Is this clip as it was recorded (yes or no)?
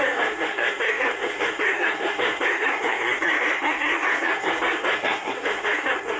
no